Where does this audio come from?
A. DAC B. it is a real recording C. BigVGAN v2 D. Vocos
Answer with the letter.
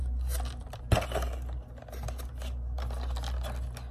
B